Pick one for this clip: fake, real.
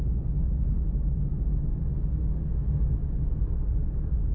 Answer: real